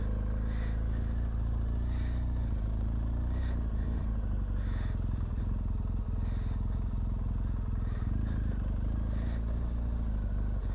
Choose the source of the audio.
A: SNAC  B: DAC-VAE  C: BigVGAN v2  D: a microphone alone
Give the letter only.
D